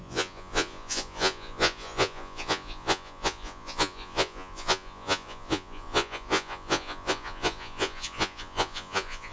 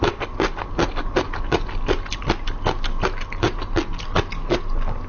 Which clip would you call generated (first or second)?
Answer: first